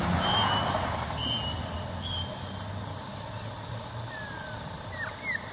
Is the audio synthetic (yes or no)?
no